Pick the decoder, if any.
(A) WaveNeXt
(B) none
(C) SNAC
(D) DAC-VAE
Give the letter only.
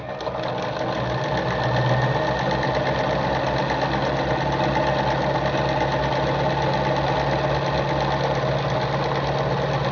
B